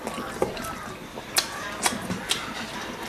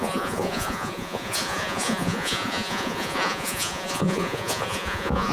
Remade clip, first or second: second